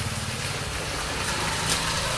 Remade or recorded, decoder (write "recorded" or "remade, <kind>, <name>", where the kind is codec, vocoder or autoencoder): recorded